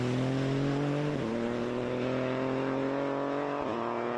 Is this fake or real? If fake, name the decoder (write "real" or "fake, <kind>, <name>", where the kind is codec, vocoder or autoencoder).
real